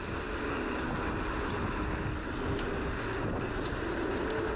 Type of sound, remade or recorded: recorded